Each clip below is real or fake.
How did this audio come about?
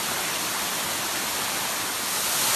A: fake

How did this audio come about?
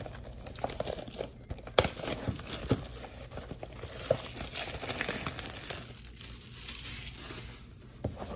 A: real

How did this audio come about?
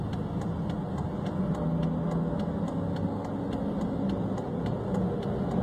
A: real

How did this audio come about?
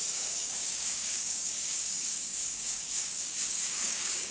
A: fake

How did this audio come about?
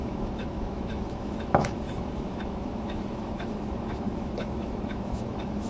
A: fake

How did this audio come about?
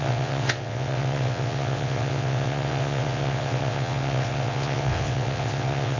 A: fake